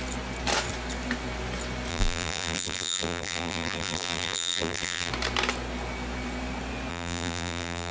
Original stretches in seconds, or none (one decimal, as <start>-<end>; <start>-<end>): 0.0-1.9; 5.1-6.9